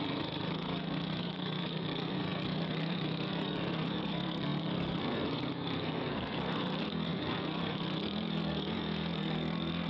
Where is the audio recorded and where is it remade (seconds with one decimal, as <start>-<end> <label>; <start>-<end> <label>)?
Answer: 0.0-9.9 remade